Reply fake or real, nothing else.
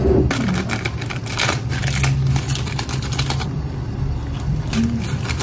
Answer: real